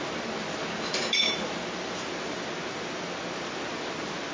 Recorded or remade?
recorded